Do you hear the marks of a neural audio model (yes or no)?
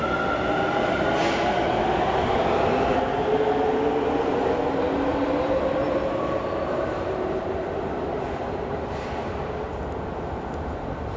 no